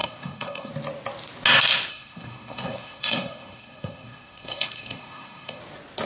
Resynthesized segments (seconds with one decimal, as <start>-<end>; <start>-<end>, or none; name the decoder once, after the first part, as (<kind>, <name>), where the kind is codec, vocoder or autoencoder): 0.0-0.7 (codec, SNAC); 1.9-5.6